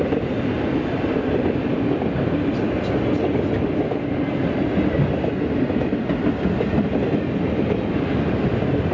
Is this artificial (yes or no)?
no